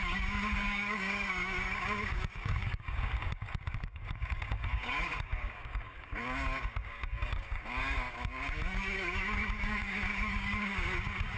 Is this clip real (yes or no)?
no